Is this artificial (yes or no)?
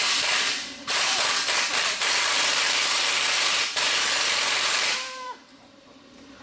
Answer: yes